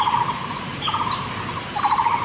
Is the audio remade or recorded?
remade